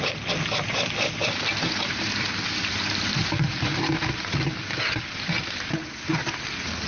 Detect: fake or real real